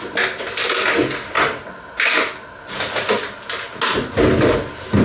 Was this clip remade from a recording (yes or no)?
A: no